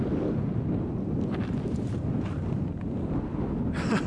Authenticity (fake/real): real